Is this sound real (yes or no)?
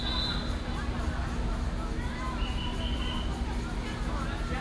yes